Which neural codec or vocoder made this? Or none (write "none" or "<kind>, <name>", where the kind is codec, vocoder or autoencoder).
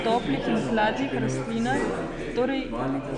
none